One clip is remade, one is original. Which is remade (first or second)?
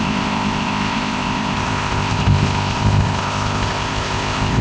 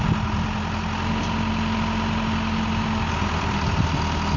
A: first